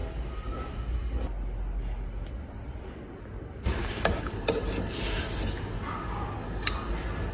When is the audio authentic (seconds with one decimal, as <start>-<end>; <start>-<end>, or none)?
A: 0.0-3.8; 4.3-7.3